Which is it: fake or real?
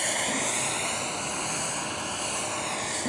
real